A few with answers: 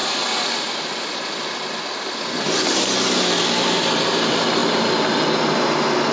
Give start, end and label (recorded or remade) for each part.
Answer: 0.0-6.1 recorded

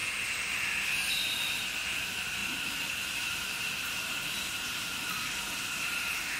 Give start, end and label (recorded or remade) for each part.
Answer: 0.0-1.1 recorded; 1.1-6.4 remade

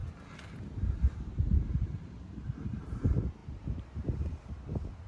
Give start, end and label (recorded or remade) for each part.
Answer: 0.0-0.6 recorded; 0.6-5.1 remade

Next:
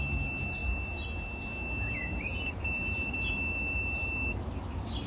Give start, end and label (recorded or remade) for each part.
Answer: 0.0-2.0 recorded; 2.0-4.1 remade; 4.1-5.1 recorded